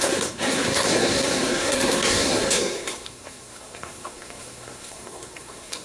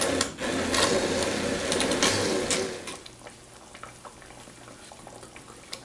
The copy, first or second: first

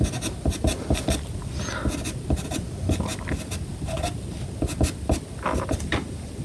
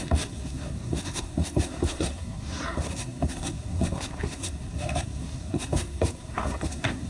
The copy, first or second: second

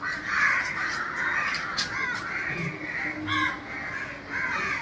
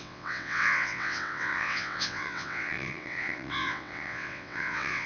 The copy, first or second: second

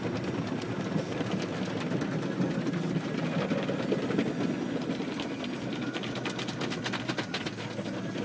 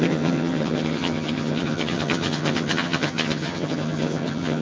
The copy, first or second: second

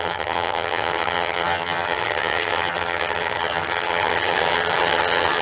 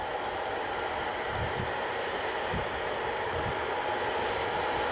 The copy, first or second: first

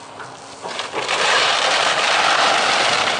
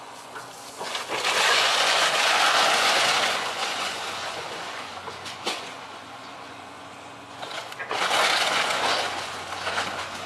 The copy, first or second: second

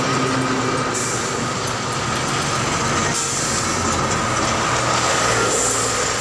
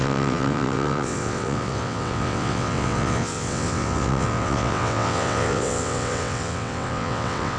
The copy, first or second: second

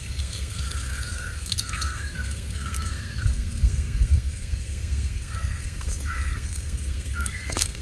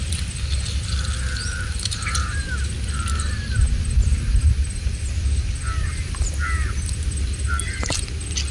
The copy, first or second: first